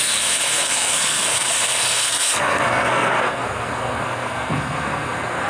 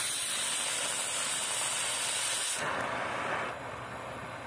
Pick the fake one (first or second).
first